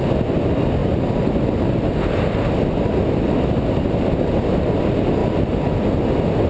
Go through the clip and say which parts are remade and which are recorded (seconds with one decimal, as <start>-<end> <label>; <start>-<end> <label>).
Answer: 0.0-6.5 recorded